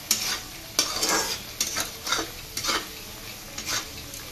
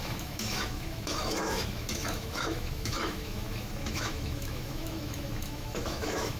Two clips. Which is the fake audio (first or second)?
second